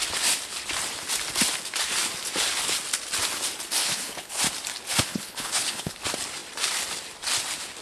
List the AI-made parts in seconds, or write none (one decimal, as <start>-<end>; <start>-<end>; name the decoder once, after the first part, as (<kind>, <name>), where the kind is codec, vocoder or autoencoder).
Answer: 3.8-4.4 (codec, HILCodec); 5.1-5.9